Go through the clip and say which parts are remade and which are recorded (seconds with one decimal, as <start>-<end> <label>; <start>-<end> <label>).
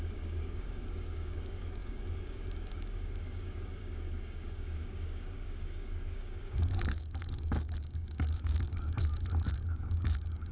0.0-9.0 remade; 9.0-9.5 recorded; 9.5-10.5 remade